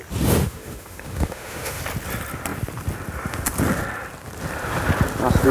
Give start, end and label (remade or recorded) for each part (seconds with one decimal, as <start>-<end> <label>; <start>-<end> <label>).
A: 0.0-0.4 recorded; 0.4-1.8 remade; 1.8-5.5 recorded